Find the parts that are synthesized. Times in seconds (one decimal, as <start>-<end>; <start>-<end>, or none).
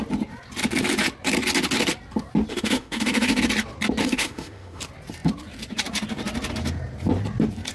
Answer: 2.5-3.4; 4.0-4.8